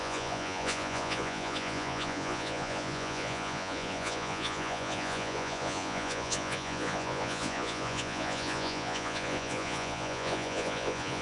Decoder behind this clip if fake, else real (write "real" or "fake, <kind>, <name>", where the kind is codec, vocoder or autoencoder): fake, vocoder, Vocos